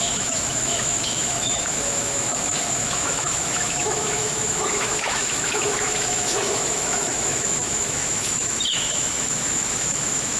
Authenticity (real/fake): fake